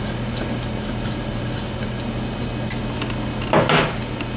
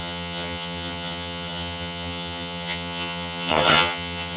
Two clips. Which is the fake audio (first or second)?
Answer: second